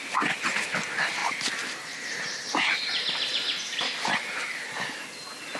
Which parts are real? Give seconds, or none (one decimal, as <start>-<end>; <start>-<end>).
0.0-1.2; 4.6-5.6